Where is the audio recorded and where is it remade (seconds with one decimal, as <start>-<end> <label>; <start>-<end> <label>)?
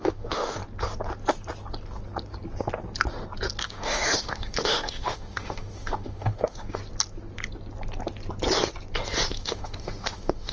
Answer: 0.0-0.6 remade; 0.6-3.6 recorded; 3.6-6.8 remade; 6.8-9.3 recorded; 9.3-10.5 remade